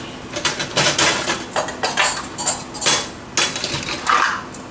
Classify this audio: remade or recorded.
recorded